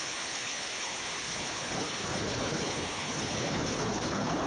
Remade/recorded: remade